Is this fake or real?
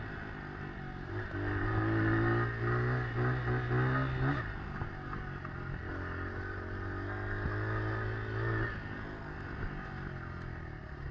real